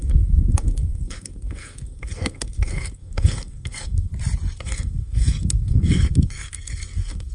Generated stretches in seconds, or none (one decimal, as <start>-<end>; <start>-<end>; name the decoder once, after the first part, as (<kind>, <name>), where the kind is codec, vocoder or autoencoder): 0.0-4.1 (codec, SNAC); 4.6-7.3